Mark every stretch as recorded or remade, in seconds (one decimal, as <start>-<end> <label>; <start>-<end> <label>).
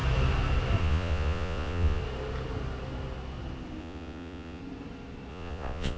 0.0-0.8 recorded; 0.8-2.0 remade; 2.0-3.8 recorded; 3.8-4.6 remade; 4.6-5.3 recorded; 5.3-6.0 remade